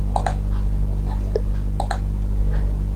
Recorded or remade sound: recorded